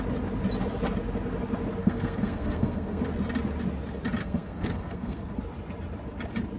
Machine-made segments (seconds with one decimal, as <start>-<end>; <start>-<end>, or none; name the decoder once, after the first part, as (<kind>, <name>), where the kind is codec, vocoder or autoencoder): 1.8-3.0 (codec, SNAC); 4.2-5.4